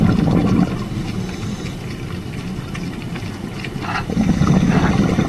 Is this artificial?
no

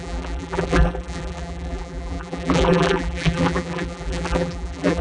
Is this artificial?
yes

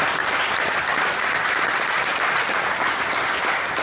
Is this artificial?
no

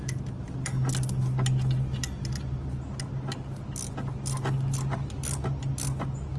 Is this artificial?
no